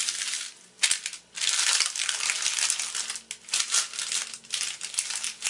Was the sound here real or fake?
real